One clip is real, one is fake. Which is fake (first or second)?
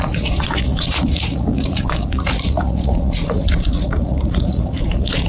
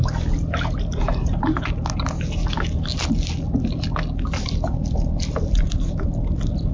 first